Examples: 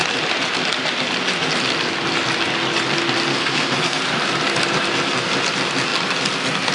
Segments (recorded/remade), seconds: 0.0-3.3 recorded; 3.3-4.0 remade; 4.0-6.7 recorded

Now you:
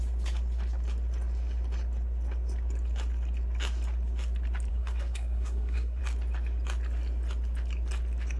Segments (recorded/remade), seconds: 0.0-4.7 recorded; 4.7-6.0 remade; 6.0-8.4 recorded